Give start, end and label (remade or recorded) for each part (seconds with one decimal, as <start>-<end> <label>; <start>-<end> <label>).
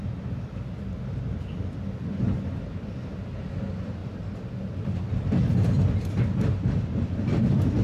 0.0-7.8 recorded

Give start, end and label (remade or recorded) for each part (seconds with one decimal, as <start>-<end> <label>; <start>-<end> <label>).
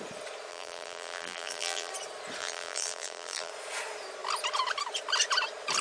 0.0-0.5 recorded; 0.5-1.9 remade; 1.9-2.4 recorded; 2.4-3.5 remade; 3.5-5.8 recorded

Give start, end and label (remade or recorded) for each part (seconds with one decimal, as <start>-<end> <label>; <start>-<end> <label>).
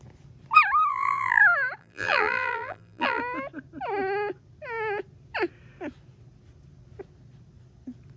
0.0-0.9 recorded; 0.9-1.4 remade; 1.4-1.8 recorded; 1.8-3.2 remade; 3.2-8.2 recorded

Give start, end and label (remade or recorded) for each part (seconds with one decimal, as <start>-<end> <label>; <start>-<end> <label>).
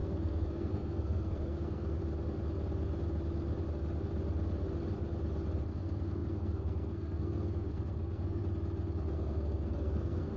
0.0-2.0 remade; 2.0-5.7 recorded; 5.7-8.4 remade; 8.4-9.0 recorded; 9.0-10.4 remade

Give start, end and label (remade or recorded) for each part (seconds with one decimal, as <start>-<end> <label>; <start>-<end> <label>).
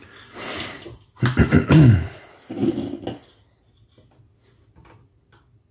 0.0-5.7 recorded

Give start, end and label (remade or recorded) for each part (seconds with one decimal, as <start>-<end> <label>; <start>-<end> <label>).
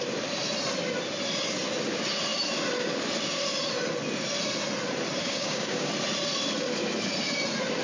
0.0-5.2 recorded; 5.2-5.9 remade; 5.9-7.8 recorded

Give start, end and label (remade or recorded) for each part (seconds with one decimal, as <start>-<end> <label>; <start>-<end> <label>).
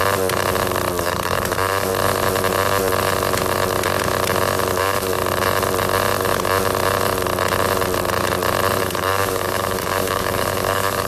0.0-1.0 recorded; 1.0-1.9 remade; 1.9-4.8 recorded; 4.8-5.2 remade; 5.2-8.8 recorded; 8.8-11.1 remade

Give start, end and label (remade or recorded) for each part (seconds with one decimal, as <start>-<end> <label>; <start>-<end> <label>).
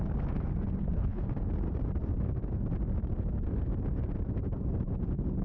0.0-0.8 recorded; 0.8-1.3 remade; 1.3-5.4 recorded